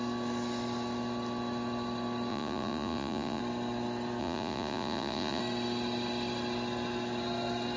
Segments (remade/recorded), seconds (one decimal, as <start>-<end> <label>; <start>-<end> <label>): 0.0-2.3 recorded; 2.3-3.4 remade; 3.4-4.2 recorded; 4.2-5.4 remade; 5.4-7.8 recorded